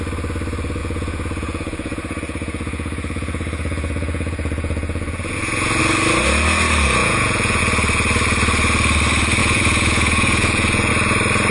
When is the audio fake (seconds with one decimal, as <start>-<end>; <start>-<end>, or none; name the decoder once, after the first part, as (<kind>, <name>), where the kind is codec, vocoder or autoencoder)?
0.8-5.8 (vocoder, Vocos); 7.0-7.6; 9.4-10.9